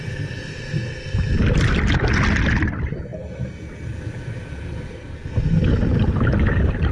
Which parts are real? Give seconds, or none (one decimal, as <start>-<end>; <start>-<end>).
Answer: 0.0-6.9